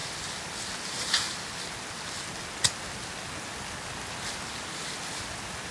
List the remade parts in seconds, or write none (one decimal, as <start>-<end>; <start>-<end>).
none

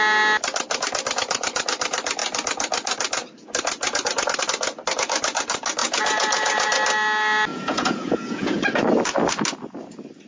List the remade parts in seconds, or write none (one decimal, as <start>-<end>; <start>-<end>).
5.8-6.7; 7.5-8.6

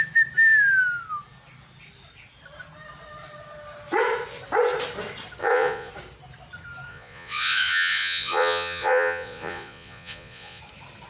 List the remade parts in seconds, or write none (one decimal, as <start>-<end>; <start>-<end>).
5.4-5.9; 6.9-10.6

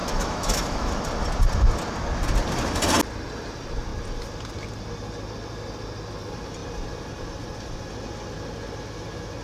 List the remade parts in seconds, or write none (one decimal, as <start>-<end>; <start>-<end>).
0.0-0.9